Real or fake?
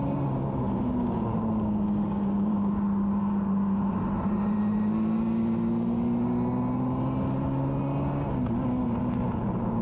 real